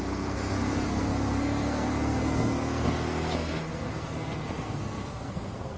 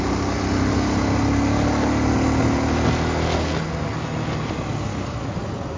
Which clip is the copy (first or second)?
first